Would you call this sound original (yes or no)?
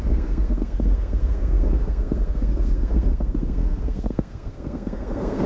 no